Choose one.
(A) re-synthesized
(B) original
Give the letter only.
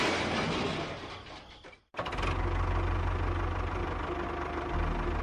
B